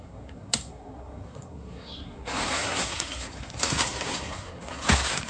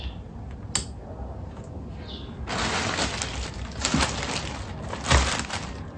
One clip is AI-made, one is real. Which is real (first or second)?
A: second